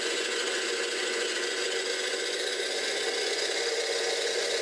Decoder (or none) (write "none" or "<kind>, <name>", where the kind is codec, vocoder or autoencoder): vocoder, Vocos